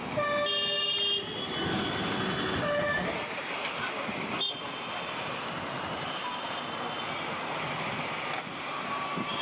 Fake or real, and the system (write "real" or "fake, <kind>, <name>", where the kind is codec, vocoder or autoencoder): real